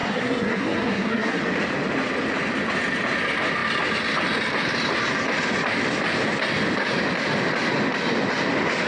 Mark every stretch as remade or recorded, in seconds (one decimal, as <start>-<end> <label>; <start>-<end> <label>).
0.0-1.4 remade; 1.4-8.9 recorded